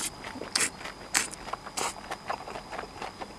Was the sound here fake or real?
real